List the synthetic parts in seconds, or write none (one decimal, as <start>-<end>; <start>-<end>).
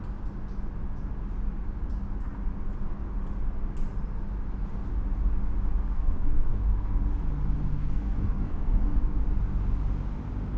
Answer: 5.8-7.1; 7.7-9.2